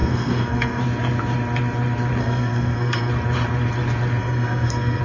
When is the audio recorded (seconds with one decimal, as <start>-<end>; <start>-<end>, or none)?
0.8-2.2; 3.1-4.2